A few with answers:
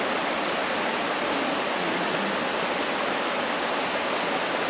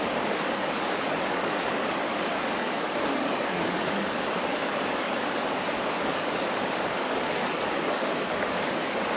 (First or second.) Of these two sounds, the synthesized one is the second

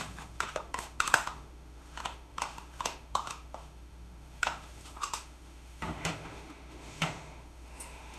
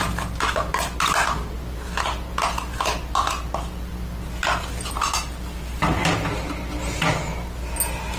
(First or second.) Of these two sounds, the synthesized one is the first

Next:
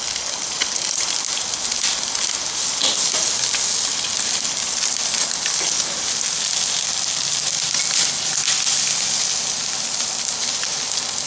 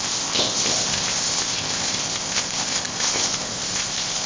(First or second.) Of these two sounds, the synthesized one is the second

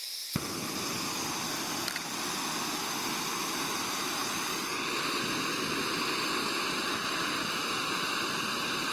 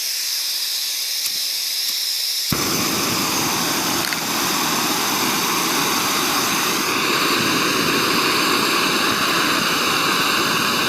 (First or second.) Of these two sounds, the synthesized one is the second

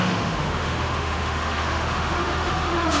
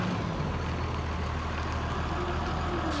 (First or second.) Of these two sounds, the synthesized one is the first